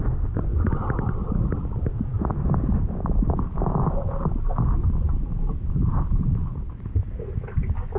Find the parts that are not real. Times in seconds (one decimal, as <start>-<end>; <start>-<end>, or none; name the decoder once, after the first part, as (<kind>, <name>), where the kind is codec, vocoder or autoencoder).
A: none

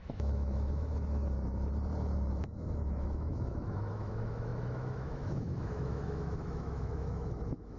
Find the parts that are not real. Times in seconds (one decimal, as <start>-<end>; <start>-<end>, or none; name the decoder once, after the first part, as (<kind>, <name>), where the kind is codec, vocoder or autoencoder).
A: 0.0-1.2 (autoencoder, DAC-VAE); 2.3-7.8